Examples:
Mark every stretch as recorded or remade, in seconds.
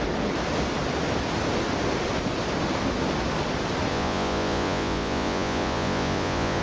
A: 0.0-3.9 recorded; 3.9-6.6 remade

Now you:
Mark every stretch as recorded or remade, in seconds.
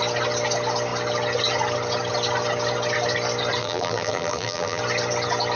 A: 0.0-3.6 recorded; 3.6-4.8 remade; 4.8-5.6 recorded